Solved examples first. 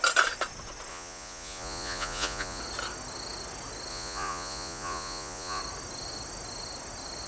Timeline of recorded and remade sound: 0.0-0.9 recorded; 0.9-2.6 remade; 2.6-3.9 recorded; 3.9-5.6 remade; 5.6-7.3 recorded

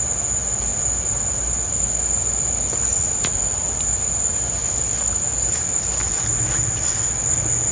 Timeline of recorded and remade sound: 0.0-2.9 recorded; 2.9-3.6 remade; 3.6-7.7 recorded

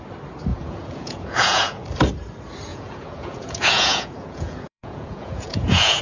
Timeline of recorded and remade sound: 0.0-0.5 recorded; 0.5-1.8 remade; 1.8-2.7 recorded; 2.7-6.0 remade

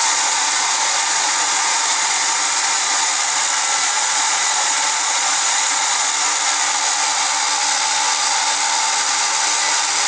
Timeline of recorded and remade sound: 0.0-3.1 remade; 3.1-3.8 recorded; 3.8-6.1 remade; 6.1-10.1 recorded

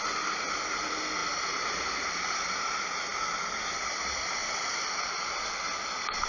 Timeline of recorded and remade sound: 0.0-6.3 recorded

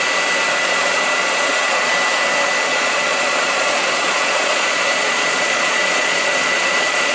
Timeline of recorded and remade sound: 0.0-0.6 recorded; 0.6-1.9 remade; 1.9-2.7 recorded; 2.7-7.1 remade

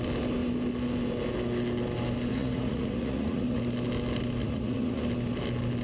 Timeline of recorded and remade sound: 0.0-2.3 recorded; 2.3-3.6 remade; 3.6-4.4 recorded; 4.4-5.0 remade; 5.0-5.8 recorded

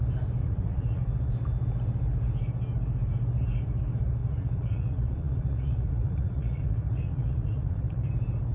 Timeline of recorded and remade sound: 0.0-0.4 recorded; 0.4-1.0 remade; 1.0-4.2 recorded; 4.2-8.1 remade; 8.1-8.5 recorded